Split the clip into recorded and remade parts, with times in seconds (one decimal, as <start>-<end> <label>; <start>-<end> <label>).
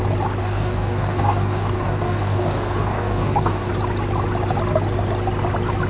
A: 0.0-0.4 recorded; 0.4-3.7 remade; 3.7-5.9 recorded